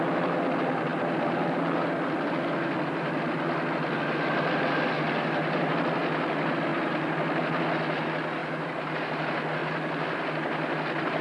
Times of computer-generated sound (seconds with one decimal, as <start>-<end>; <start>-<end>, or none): 8.4-9.0